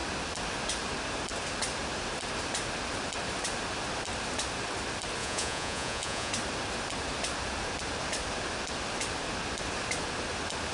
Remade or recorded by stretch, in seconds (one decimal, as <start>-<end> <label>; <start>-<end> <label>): 0.0-5.2 recorded; 5.2-6.3 remade; 6.3-10.7 recorded